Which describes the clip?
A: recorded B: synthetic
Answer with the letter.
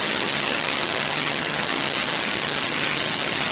B